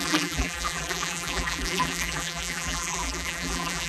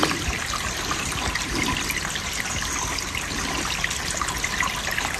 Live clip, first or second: second